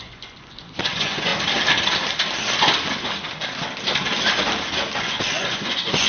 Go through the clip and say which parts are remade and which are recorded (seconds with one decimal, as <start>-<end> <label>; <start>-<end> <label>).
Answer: 0.0-1.3 remade; 1.3-5.0 recorded; 5.0-6.1 remade